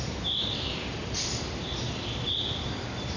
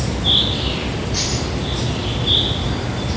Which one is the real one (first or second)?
second